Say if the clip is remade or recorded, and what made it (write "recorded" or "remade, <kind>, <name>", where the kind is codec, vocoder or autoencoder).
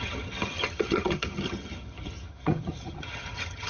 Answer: remade, vocoder, HiFi-GAN